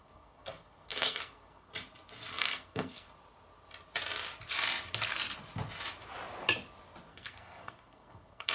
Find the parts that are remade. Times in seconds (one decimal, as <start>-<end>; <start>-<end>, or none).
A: 0.0-1.7; 2.3-3.1; 7.1-8.5